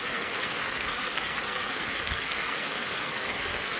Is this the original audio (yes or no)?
no